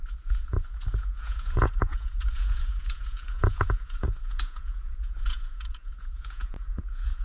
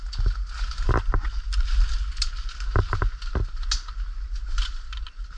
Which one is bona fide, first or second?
second